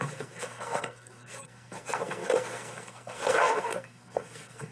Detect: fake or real fake